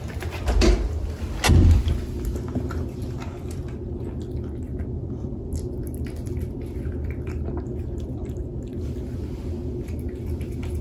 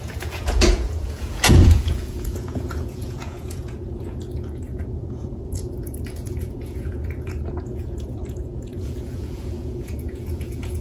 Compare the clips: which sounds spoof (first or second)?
second